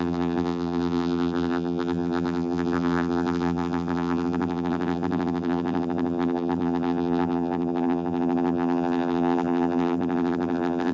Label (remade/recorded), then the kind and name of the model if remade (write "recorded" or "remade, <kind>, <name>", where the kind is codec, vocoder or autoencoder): remade, vocoder, BigVGAN v2